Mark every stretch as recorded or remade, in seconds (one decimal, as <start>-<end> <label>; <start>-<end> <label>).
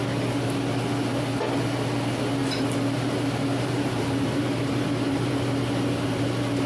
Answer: 0.0-2.4 recorded; 2.4-5.5 remade; 5.5-6.7 recorded